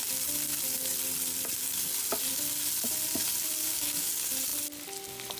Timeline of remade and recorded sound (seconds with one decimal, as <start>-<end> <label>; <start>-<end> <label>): 0.0-3.6 recorded; 3.6-4.1 remade; 4.1-5.4 recorded